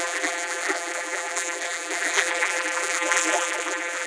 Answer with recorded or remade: remade